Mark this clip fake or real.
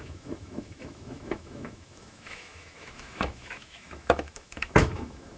fake